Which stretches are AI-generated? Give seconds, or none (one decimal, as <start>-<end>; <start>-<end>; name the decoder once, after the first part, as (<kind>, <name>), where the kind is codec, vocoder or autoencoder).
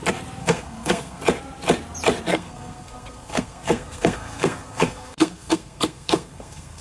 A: 0.4-1.2 (codec, SNAC); 2.3-6.8